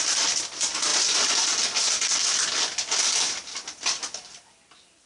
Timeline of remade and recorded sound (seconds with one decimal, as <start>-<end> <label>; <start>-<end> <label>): 0.0-5.1 recorded